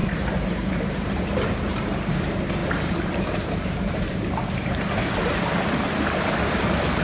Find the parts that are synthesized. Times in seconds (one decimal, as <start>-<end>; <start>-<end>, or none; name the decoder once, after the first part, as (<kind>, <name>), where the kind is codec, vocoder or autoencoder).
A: 0.0-2.2 (vocoder, BigVGAN v2); 2.6-5.1